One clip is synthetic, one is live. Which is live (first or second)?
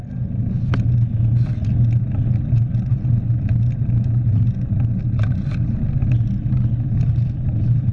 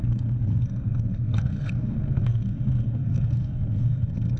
first